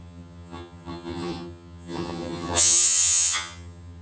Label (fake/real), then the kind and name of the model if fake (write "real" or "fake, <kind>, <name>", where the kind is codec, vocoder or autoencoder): fake, vocoder, HiFi-GAN